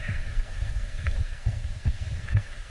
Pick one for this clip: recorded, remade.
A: remade